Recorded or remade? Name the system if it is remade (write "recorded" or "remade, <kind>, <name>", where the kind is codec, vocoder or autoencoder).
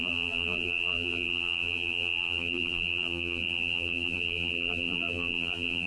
remade, vocoder, BigVGAN v2